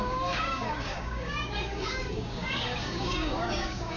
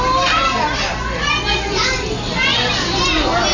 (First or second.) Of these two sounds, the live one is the second